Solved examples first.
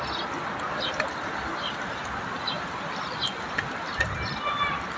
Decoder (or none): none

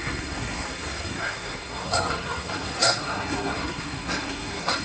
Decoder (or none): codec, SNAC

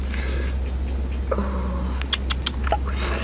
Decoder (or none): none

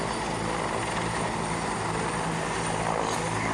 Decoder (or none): none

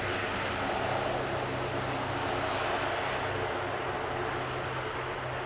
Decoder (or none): none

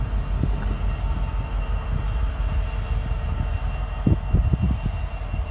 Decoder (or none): none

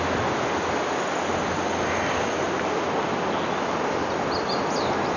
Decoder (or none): none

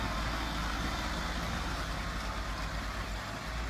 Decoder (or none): none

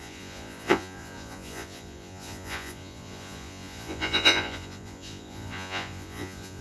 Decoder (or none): vocoder, Vocos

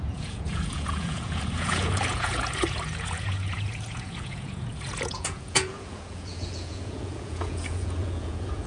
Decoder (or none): vocoder, Vocos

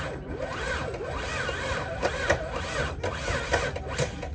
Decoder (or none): none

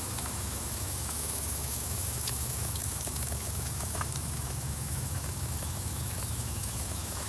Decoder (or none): autoencoder, DAC-VAE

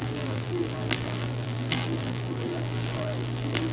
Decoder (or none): vocoder, BigVGAN v2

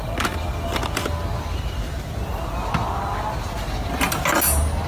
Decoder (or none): none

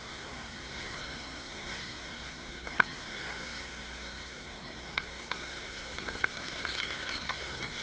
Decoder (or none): codec, SNAC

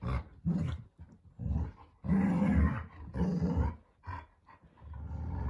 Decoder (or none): none